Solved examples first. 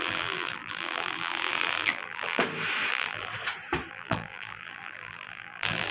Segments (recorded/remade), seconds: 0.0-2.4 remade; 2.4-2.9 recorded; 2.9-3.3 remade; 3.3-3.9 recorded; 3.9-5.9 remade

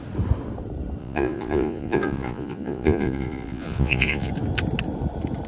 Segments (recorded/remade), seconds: 0.0-1.0 recorded; 1.0-4.3 remade; 4.3-5.5 recorded

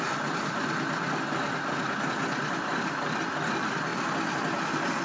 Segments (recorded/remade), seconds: 0.0-5.0 recorded

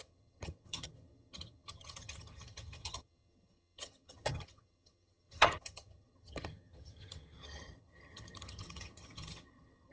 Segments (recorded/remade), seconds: 0.0-9.9 remade

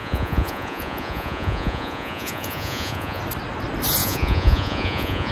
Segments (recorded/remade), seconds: 0.0-3.2 remade; 3.2-4.0 recorded; 4.0-5.3 remade

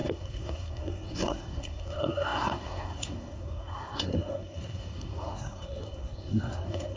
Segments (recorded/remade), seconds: 0.0-7.0 remade